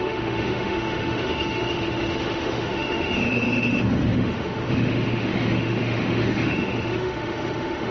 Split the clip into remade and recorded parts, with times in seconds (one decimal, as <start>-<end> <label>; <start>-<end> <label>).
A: 0.0-7.9 remade